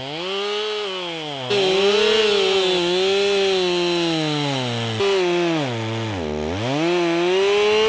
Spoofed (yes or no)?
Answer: no